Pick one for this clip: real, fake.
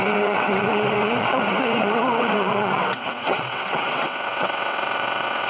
fake